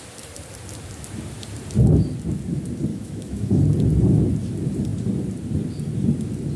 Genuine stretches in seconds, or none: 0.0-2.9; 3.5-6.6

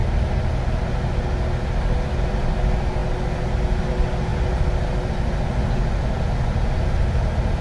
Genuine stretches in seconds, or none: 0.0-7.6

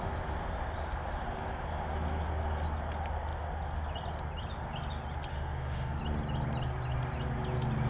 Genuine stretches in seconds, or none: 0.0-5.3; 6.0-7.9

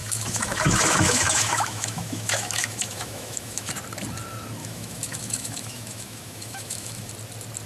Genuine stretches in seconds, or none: 3.7-4.6; 7.1-7.7

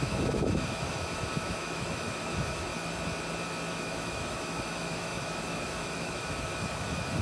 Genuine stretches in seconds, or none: 2.7-3.7

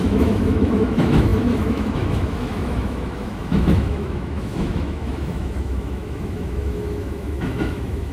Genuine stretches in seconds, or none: none

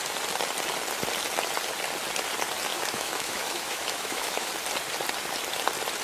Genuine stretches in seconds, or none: 0.0-2.7; 4.5-6.0